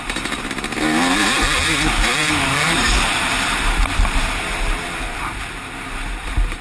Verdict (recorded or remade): remade